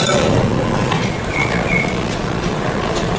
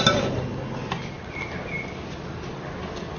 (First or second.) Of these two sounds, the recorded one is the second